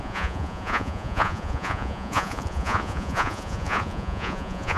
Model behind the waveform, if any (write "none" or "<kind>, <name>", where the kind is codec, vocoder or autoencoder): vocoder, Vocos